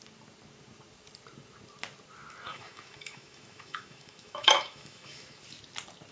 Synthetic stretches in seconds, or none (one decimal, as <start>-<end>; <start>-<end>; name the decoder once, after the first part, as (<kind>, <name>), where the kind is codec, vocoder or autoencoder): 2.5-5.4 (autoencoder, DAC-VAE)